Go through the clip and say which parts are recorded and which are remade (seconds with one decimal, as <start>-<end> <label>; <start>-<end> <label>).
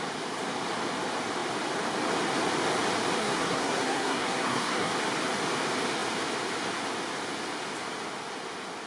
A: 0.0-3.2 recorded; 3.2-4.9 remade; 4.9-8.9 recorded